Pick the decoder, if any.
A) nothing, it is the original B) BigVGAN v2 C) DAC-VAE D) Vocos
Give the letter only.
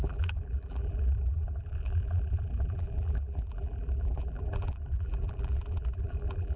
B